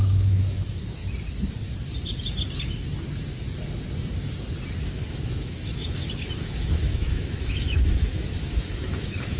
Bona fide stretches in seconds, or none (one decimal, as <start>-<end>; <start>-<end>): 1.0-4.9; 5.8-6.7